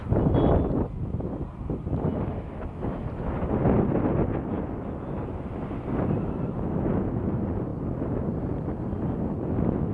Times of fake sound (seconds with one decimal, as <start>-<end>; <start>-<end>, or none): none